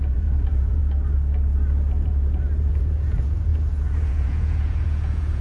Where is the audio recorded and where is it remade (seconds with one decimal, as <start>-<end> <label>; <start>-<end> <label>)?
0.0-0.8 remade; 0.8-2.7 recorded; 2.7-5.4 remade